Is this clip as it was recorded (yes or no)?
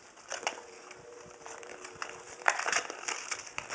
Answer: no